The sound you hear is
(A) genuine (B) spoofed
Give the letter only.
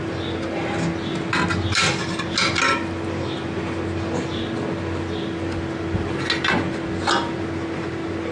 A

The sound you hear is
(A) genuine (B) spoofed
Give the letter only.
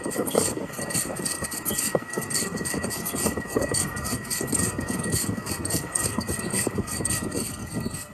B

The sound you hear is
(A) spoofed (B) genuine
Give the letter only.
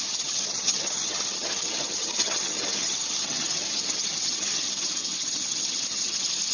A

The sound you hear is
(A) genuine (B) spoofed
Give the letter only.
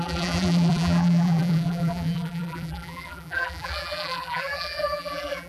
B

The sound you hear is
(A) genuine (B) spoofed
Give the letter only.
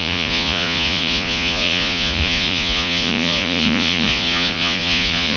B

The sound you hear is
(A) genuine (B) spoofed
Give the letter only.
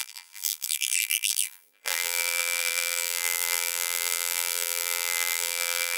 B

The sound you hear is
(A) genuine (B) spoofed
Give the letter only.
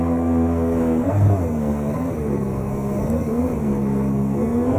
B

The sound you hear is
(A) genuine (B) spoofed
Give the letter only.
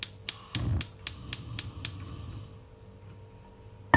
A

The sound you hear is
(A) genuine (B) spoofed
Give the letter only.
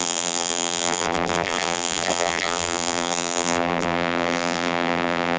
B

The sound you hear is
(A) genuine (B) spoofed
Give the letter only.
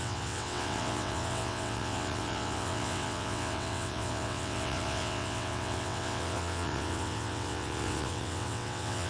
B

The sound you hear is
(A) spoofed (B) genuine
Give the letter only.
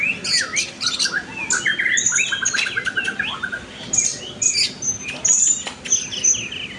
B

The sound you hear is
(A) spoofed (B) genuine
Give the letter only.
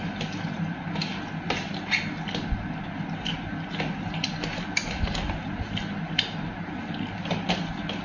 B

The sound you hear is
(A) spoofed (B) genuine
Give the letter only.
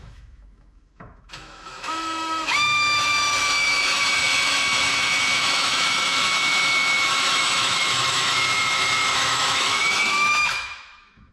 A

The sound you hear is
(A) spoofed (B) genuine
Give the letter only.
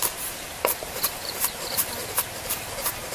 A